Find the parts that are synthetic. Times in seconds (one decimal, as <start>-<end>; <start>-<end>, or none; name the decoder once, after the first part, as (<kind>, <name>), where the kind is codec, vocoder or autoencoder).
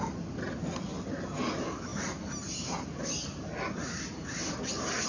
none